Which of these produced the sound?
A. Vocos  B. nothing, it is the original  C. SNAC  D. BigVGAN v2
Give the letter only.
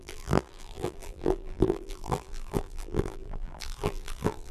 D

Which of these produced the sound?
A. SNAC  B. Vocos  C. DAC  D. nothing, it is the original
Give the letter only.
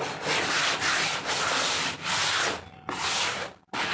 D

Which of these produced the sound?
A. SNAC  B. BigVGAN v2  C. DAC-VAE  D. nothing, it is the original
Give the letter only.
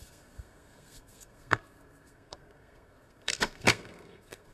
A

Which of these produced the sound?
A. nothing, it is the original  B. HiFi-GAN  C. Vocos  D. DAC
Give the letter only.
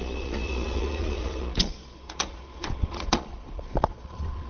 C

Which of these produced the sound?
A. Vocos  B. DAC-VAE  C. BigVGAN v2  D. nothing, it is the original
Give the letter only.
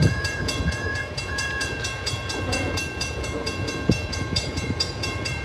A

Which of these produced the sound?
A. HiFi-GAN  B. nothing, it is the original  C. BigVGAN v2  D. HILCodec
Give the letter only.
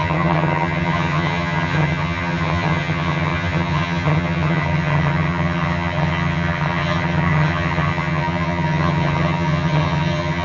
A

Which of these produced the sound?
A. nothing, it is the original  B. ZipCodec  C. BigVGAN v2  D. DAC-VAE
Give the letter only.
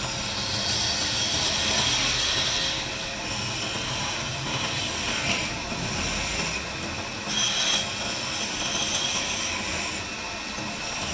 A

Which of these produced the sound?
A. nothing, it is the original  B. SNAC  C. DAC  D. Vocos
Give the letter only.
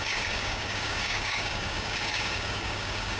C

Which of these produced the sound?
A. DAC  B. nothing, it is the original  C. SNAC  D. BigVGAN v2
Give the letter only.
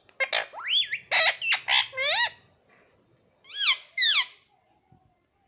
B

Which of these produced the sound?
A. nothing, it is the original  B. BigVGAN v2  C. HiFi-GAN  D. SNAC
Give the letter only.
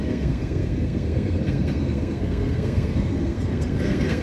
D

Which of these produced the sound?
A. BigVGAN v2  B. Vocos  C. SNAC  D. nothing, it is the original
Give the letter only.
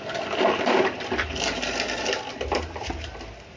D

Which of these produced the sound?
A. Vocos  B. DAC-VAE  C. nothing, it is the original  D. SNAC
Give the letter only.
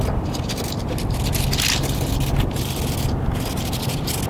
C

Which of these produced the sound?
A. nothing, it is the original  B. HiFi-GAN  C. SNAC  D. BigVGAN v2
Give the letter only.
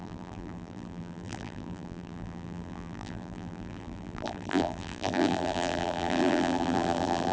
D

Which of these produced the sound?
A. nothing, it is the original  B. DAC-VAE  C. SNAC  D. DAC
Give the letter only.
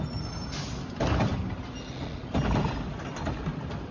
A